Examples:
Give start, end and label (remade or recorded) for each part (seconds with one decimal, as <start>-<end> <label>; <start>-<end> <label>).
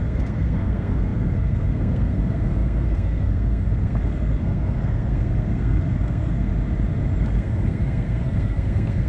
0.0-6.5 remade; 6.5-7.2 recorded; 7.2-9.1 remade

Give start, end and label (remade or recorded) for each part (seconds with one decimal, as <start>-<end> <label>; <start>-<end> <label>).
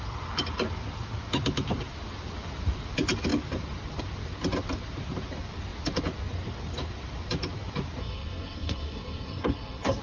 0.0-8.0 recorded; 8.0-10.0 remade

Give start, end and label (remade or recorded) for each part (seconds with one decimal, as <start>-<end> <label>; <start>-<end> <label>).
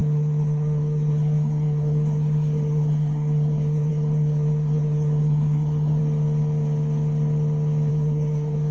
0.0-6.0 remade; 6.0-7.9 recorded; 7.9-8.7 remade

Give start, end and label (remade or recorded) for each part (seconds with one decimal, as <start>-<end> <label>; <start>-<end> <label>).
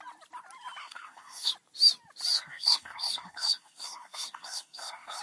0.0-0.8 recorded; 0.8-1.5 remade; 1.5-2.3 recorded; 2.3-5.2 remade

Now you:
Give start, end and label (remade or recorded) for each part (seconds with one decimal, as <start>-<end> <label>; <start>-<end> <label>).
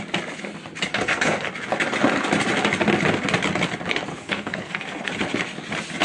0.0-0.9 recorded; 0.9-1.5 remade; 1.5-4.1 recorded; 4.1-5.1 remade; 5.1-6.0 recorded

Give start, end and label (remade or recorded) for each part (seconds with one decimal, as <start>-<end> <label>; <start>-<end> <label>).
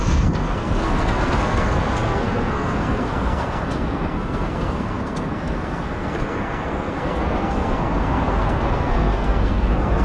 0.0-10.0 remade